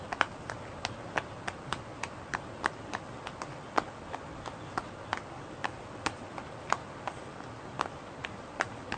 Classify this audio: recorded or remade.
recorded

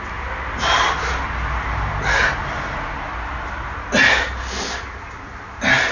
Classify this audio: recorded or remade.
recorded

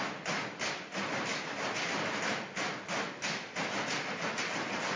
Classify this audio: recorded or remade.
recorded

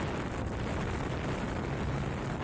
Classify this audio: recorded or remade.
recorded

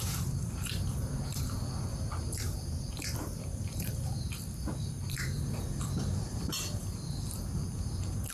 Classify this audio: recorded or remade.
remade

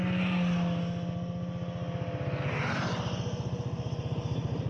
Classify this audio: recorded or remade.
recorded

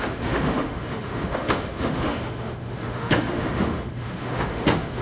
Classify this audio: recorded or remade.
remade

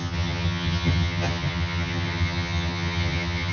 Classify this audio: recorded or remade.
remade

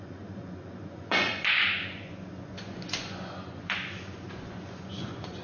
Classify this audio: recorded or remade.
remade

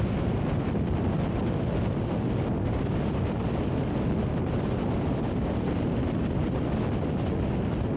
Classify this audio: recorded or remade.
recorded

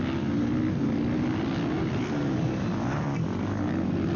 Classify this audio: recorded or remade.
recorded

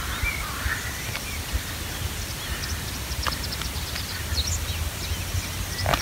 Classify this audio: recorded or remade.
recorded